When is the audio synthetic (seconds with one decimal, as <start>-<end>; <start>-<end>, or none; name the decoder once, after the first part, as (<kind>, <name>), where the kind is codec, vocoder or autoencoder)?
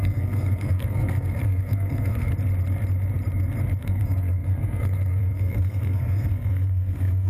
0.0-2.3 (codec, SNAC); 3.8-7.3